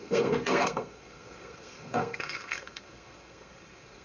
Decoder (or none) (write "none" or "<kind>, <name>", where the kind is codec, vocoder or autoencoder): codec, SNAC